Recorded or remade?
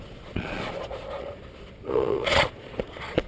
remade